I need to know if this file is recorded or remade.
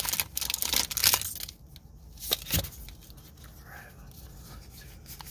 recorded